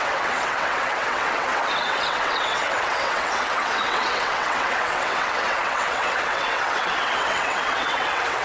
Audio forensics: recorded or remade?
remade